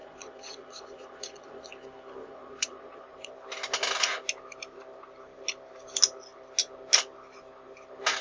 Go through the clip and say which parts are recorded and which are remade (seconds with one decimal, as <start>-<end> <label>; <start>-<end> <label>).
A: 0.0-1.7 remade; 1.7-2.2 recorded; 2.2-3.3 remade; 3.3-8.2 recorded